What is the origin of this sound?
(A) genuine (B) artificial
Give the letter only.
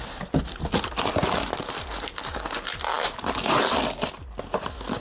A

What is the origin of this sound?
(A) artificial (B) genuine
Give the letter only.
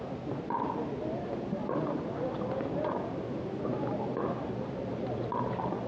B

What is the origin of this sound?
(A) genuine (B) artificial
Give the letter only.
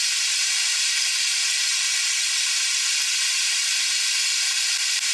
A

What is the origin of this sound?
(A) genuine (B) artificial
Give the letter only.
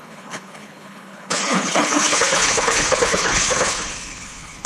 B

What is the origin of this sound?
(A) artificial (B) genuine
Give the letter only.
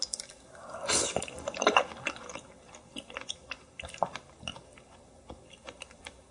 B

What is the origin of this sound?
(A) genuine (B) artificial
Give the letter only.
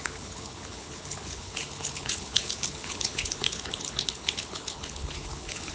B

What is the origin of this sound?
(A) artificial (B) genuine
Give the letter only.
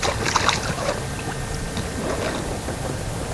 B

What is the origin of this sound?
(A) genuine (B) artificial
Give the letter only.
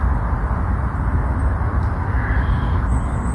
A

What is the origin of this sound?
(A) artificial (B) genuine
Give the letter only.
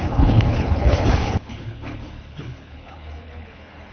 A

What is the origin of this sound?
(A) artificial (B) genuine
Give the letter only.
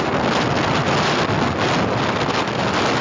B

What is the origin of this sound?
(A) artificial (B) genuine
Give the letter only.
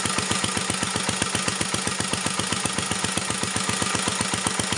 B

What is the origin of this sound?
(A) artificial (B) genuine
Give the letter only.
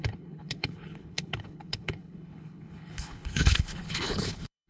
A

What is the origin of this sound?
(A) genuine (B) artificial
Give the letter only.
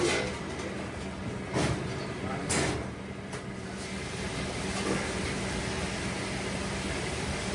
A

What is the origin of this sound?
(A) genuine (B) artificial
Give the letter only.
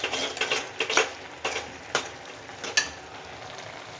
A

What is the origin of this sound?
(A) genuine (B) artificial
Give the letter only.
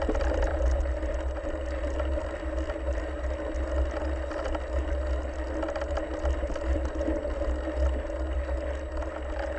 A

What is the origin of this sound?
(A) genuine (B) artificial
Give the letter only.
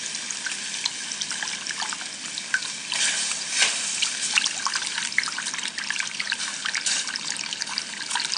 A